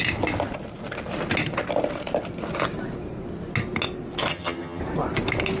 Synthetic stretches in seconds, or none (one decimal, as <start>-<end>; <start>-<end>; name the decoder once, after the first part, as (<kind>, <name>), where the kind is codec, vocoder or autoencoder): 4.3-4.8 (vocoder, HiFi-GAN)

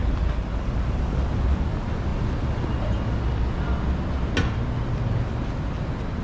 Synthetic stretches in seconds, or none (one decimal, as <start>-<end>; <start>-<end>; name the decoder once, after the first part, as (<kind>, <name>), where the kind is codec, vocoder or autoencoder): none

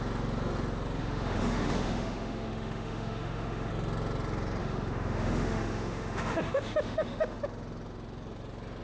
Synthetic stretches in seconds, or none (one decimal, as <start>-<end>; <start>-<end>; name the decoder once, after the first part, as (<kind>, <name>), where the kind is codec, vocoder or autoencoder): 1.0-3.7 (autoencoder, DAC-VAE); 4.6-7.4

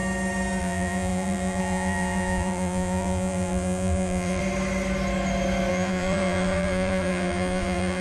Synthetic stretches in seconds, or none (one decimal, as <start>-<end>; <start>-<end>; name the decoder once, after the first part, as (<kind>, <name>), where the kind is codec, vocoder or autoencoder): 0.6-4.4 (vocoder, BigVGAN v2); 5.7-8.0

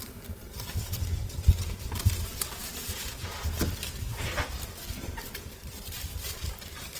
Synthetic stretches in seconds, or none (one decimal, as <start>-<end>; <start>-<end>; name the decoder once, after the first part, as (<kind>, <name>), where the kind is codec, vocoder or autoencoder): none